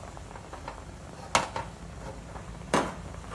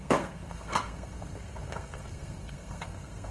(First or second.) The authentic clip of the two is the first